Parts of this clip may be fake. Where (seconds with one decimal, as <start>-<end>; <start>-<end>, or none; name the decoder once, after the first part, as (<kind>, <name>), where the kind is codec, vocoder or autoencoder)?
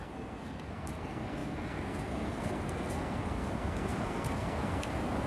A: 0.0-5.3 (codec, SNAC)